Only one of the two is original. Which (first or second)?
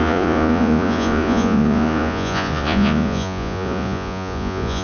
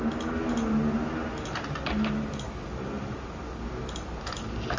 second